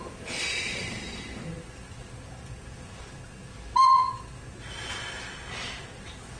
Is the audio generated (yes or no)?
no